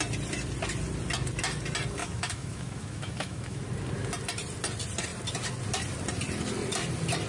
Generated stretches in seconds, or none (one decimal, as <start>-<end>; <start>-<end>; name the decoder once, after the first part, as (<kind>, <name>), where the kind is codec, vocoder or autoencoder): 2.0-3.6 (autoencoder, DAC-VAE)